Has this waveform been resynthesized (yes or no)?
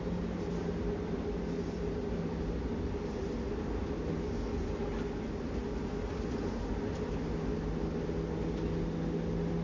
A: no